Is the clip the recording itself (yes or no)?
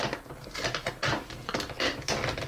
yes